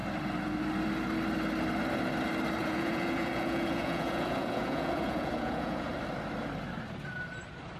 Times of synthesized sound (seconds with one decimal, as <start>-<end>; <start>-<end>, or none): 2.6-5.9